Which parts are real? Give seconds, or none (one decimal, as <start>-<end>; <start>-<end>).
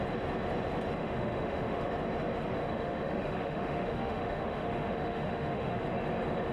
0.0-1.0; 1.9-2.6; 5.8-6.5